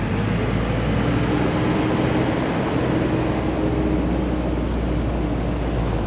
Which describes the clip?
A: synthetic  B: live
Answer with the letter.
B